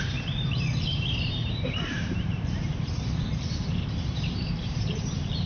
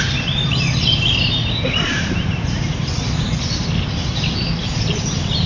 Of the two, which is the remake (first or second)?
first